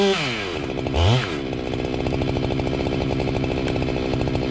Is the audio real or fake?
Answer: real